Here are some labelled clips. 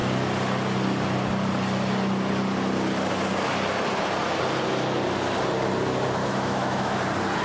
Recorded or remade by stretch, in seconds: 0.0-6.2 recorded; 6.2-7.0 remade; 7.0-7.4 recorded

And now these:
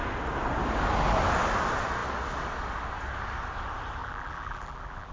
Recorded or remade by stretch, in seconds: 0.0-4.0 recorded; 4.0-5.1 remade